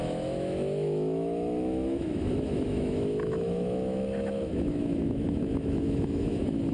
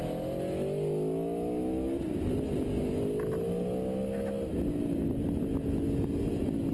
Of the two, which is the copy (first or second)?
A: first